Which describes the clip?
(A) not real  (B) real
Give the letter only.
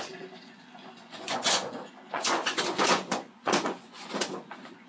A